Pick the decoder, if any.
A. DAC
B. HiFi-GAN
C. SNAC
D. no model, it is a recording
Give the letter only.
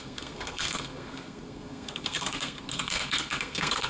C